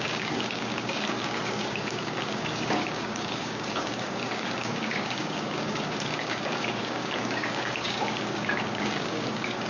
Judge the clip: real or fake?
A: fake